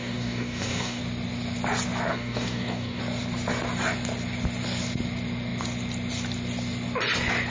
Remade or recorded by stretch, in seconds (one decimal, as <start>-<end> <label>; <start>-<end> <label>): 0.0-1.0 remade; 1.0-2.1 recorded; 2.1-3.0 remade; 3.0-7.5 recorded